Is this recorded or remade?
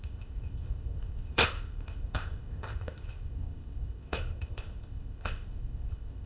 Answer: remade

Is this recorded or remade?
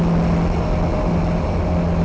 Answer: recorded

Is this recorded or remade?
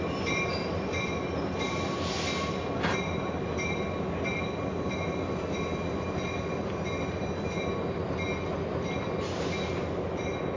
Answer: recorded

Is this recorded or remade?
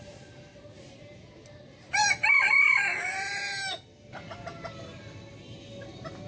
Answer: recorded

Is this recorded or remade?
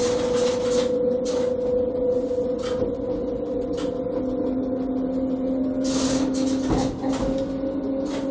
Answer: recorded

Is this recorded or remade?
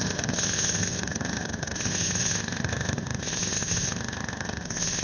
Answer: remade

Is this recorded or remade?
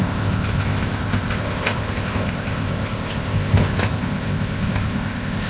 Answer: remade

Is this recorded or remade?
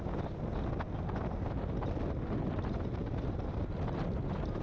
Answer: recorded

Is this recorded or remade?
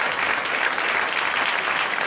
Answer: recorded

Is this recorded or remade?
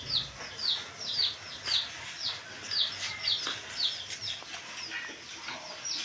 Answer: recorded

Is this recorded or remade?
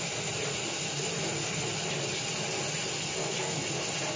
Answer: recorded